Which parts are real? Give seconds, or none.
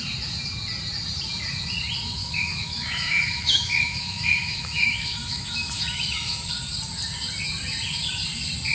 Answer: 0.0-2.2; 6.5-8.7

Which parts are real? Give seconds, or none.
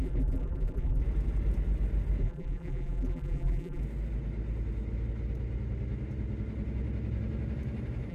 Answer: 1.0-2.2; 3.8-8.1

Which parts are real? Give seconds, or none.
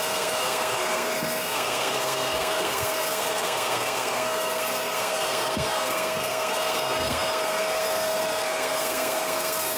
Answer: none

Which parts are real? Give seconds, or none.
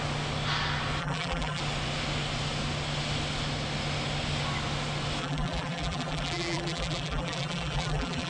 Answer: 0.0-1.0; 1.6-5.2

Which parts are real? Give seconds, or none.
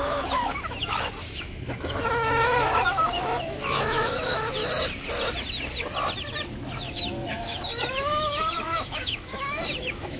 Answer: 4.6-6.9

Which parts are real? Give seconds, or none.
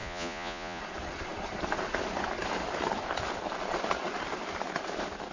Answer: 0.8-5.3